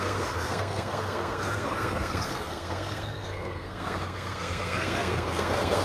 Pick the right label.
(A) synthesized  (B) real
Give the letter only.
A